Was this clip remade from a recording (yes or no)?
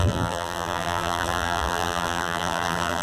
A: yes